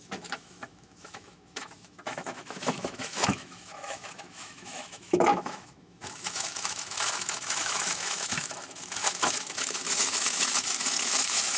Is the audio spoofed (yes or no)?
yes